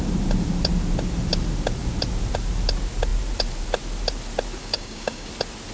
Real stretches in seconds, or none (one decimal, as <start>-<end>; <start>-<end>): 0.0-4.6; 5.3-5.7